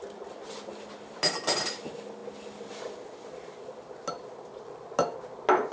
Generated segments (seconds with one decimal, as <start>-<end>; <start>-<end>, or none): none